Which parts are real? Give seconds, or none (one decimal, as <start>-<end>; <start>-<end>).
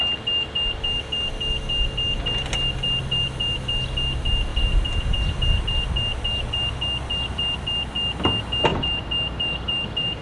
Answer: 0.0-4.5; 5.6-8.7